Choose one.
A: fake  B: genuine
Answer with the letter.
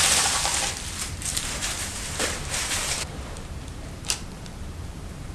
A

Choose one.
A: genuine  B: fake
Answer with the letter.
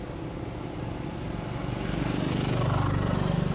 A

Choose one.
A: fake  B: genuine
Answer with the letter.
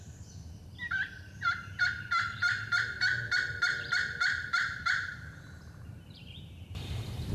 A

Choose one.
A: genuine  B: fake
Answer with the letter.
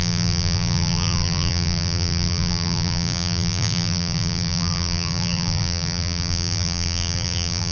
B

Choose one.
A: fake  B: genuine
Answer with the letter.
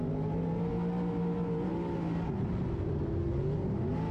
B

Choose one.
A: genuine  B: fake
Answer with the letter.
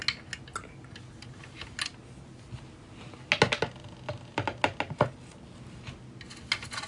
A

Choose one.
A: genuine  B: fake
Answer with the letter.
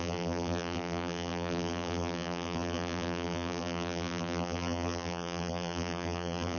B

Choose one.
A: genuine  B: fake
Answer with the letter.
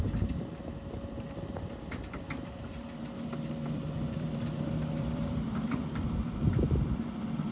B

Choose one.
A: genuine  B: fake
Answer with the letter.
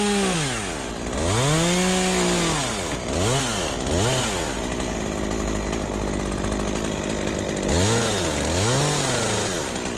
A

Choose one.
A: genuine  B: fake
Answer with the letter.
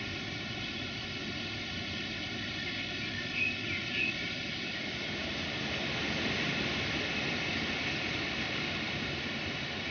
A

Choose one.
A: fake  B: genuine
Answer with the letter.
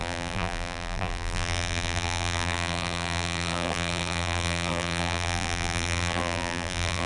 A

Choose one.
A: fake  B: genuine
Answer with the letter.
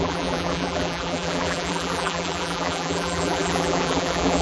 A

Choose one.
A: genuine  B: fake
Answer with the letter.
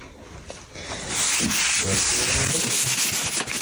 B